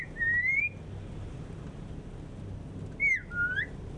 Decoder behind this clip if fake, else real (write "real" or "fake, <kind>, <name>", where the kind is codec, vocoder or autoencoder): real